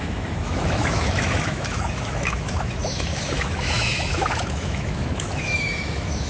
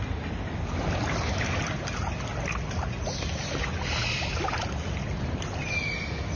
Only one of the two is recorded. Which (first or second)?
second